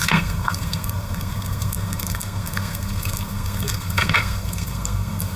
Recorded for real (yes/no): no